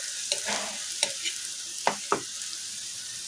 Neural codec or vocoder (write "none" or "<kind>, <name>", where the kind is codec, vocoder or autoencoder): none